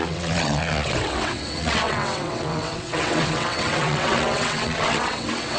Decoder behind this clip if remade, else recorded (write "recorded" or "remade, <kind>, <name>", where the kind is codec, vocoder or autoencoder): remade, vocoder, WaveNeXt